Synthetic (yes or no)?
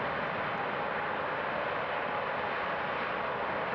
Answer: yes